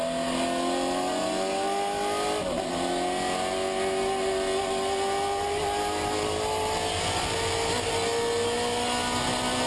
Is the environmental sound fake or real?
real